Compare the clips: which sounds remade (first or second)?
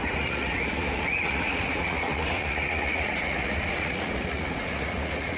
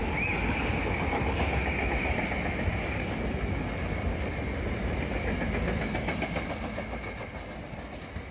first